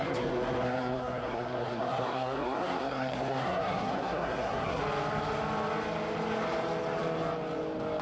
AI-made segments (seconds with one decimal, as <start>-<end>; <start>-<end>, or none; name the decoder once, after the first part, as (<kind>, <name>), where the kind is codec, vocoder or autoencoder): 0.0-4.8 (codec, SNAC)